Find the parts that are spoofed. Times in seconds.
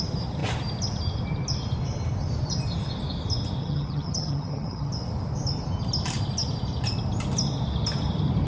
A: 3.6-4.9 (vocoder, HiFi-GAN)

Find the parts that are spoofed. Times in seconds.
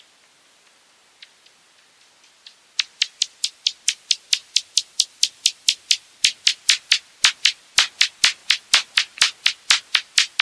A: none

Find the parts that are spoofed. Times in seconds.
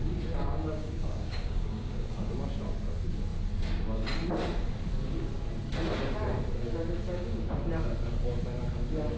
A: 0.4-2.3 (codec, DAC); 7.1-7.6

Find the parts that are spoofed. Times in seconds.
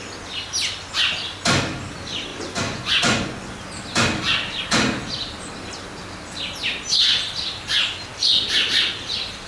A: 2.3-3.5 (vocoder, Vocos)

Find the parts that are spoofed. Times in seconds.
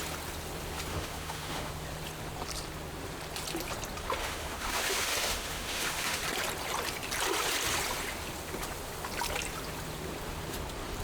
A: 0.9-1.7 (autoencoder, DAC-VAE); 4.2-6.2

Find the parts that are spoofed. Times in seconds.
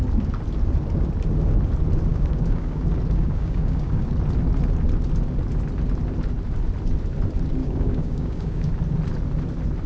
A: 2.1-2.8 (codec, DAC); 3.2-4.1; 7.6-8.7